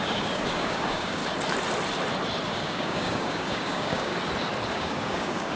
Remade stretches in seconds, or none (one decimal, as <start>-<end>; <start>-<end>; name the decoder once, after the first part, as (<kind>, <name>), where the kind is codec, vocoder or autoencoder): 0.0-1.2 (codec, DAC); 2.5-4.1; 4.7-5.6